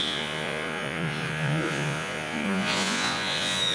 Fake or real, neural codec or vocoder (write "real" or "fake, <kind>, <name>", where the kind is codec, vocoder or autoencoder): fake, vocoder, Vocos